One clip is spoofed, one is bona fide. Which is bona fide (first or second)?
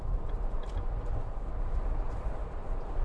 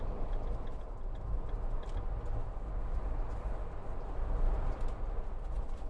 second